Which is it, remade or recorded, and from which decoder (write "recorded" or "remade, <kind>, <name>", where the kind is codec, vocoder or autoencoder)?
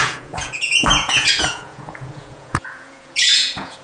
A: remade, vocoder, Vocos